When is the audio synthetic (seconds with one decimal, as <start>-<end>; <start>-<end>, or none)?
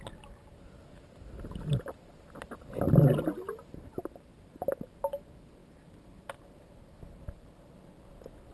none